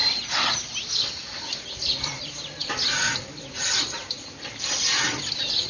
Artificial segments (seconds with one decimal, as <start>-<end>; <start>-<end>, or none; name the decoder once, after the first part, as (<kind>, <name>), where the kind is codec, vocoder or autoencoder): 1.1-2.6 (vocoder, BigVGAN v2); 3.5-5.7